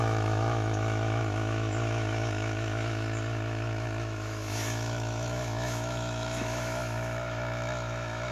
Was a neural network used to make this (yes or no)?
yes